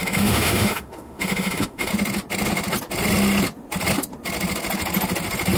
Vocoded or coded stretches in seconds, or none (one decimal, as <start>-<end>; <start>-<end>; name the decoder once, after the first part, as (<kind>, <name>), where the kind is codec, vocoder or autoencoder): 0.0-1.9 (autoencoder, DAC-VAE)